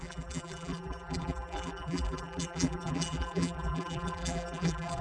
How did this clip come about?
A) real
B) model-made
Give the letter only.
B